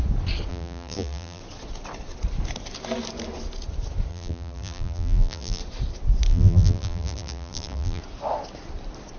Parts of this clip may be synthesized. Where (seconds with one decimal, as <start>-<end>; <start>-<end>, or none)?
0.5-1.4; 4.1-5.6; 6.3-8.0